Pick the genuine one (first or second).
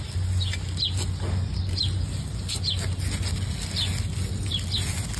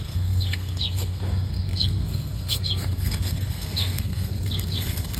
first